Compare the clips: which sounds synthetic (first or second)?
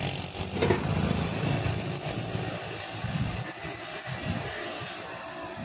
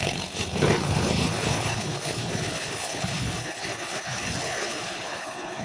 second